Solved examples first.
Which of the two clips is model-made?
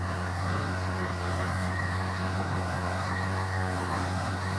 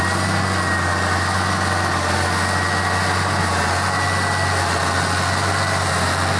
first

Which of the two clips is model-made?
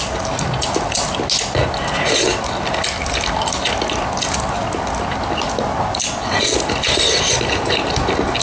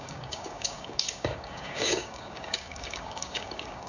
second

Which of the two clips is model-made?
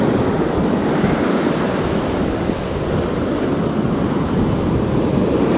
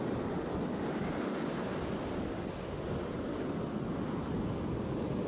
first